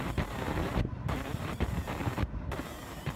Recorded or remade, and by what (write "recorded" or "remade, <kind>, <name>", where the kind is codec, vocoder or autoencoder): remade, vocoder, BigVGAN v2